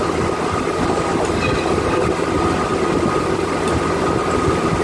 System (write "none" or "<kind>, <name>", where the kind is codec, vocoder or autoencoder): none